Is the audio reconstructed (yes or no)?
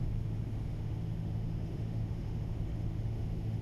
yes